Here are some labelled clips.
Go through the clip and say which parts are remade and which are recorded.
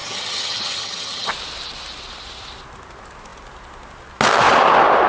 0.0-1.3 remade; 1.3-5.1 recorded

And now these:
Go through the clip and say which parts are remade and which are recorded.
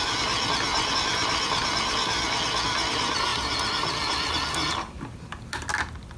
0.0-6.2 recorded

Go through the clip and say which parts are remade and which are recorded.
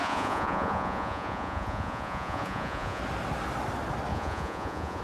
0.0-3.0 remade; 3.0-4.1 recorded; 4.1-5.0 remade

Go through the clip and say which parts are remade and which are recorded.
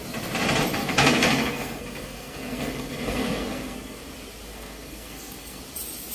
0.0-0.8 recorded; 0.8-4.0 remade; 4.0-4.5 recorded; 4.5-5.6 remade; 5.6-6.1 recorded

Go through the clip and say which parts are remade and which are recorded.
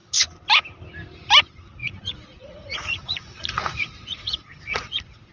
0.0-1.8 recorded; 1.8-5.3 remade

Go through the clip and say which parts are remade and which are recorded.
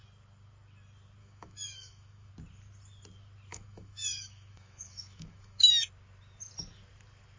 0.0-1.2 recorded; 1.2-2.3 remade; 2.3-3.5 recorded; 3.5-5.7 remade; 5.7-7.4 recorded